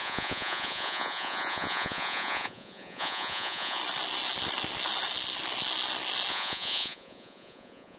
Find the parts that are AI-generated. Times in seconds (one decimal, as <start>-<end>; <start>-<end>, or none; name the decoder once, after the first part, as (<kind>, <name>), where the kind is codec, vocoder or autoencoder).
0.0-3.8 (vocoder, Vocos); 6.3-8.0